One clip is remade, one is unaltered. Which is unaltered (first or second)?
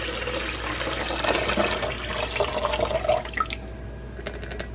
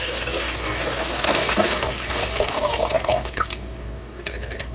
first